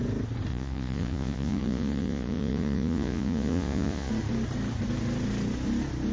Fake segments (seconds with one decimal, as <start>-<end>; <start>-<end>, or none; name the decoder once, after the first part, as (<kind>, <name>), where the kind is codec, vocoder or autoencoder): 0.5-4.1 (vocoder, Vocos)